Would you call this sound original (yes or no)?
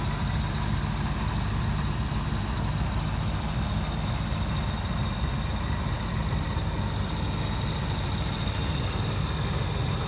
yes